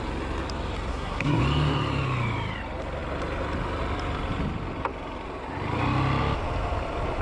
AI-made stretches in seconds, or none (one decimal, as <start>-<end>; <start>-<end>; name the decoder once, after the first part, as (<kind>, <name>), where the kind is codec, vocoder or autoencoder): 0.9-1.4 (codec, SNAC)